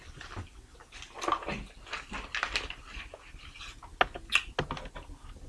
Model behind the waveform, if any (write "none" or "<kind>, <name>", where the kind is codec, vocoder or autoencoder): none